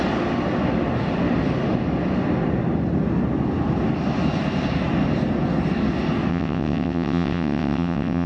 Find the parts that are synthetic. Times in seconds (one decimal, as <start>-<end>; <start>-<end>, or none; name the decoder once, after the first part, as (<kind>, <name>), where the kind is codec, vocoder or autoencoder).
6.3-8.3 (vocoder, WaveNeXt)

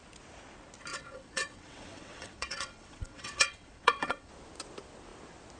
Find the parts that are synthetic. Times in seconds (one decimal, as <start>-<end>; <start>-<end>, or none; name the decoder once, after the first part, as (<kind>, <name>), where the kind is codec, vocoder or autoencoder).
0.9-4.3 (vocoder, WaveNeXt)

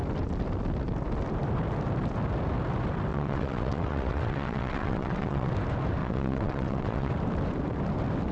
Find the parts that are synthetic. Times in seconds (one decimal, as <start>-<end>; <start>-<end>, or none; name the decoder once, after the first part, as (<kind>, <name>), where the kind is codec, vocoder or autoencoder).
3.1-5.5 (vocoder, WaveNeXt); 6.0-7.1

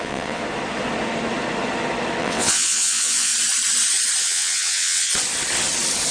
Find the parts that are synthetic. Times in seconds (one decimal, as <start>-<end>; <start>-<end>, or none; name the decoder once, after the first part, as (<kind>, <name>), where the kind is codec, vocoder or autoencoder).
0.0-0.4 (vocoder, WaveNeXt); 2.2-3.3; 4.2-5.1